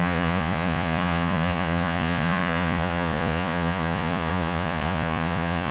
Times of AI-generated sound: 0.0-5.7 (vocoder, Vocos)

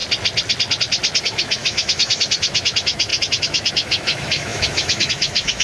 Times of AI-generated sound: 1.2-5.6 (autoencoder, DAC-VAE)

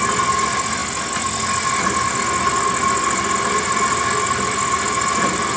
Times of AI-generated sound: none

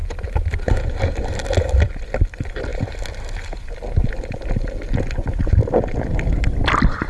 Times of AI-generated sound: 0.0-1.3 (vocoder, BigVGAN v2)